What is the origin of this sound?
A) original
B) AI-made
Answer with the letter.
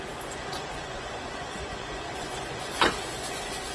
B